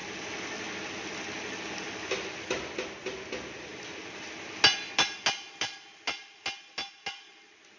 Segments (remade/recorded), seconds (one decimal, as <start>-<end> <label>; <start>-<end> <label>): 0.0-7.8 recorded